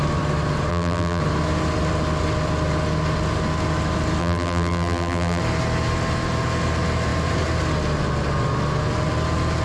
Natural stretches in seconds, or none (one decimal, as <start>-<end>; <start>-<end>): 0.0-0.7; 1.2-4.2; 5.4-9.6